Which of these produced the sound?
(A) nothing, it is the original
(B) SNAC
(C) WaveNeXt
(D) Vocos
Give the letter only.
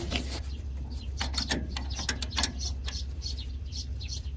A